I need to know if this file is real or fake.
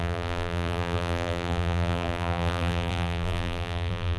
fake